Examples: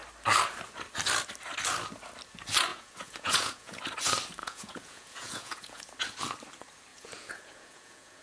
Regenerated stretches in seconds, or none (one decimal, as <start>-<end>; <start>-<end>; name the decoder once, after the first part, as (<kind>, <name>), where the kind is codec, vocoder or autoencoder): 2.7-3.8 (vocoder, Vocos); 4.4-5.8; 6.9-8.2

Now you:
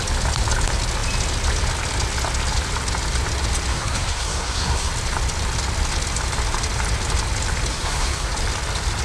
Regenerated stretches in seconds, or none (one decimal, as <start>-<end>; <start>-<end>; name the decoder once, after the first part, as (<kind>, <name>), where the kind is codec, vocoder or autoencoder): 3.7-4.9 (codec, SNAC); 7.7-8.3

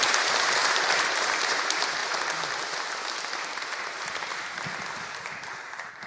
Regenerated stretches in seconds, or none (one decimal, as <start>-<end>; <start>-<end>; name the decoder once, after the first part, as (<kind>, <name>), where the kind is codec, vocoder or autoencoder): 0.0-2.0 (vocoder, BigVGAN v2)

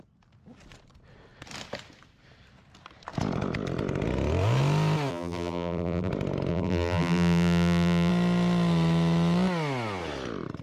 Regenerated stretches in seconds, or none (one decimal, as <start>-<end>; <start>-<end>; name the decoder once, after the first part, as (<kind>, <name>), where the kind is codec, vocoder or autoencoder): 5.1-6.1 (vocoder, BigVGAN v2); 6.5-8.1

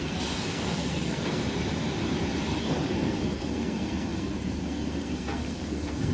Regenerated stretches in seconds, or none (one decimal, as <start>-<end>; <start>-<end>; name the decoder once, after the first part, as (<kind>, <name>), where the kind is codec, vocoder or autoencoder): 0.0-1.4 (codec, SNAC); 2.6-6.1

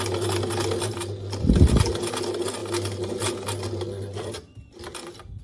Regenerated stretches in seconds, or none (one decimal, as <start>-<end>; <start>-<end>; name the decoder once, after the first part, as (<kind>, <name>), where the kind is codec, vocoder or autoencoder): none

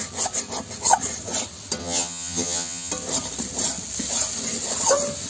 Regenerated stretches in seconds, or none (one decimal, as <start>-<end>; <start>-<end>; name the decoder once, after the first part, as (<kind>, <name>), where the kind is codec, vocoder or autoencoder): 1.8-2.9 (vocoder, HiFi-GAN)

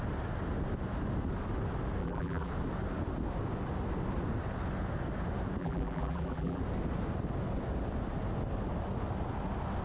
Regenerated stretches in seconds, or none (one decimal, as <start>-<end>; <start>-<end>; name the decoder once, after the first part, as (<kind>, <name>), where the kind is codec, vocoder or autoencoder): 2.0-2.5 (vocoder, BigVGAN v2); 5.6-6.6